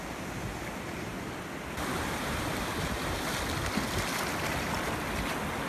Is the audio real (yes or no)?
yes